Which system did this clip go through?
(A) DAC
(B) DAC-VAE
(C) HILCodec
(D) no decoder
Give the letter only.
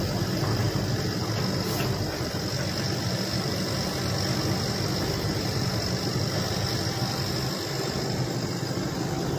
D